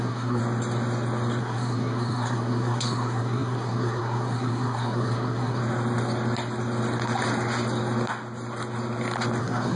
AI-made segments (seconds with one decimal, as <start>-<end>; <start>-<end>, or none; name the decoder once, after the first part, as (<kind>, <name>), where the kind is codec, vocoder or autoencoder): 0.0-0.4 (codec, SNAC); 1.4-5.6; 9.4-9.8